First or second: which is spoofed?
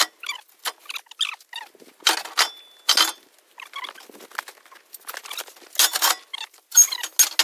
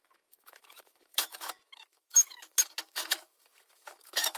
second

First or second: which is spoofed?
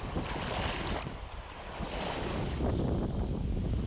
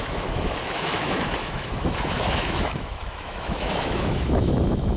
second